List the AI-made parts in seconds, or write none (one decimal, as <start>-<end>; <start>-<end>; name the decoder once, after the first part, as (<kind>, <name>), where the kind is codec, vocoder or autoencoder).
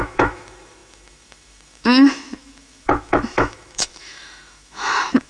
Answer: 0.0-5.3 (autoencoder, DAC-VAE)